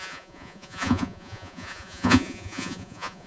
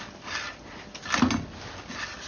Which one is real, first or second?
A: second